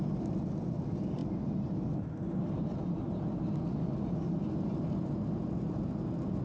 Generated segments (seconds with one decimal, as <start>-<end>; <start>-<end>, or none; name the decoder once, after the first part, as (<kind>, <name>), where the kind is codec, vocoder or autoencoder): none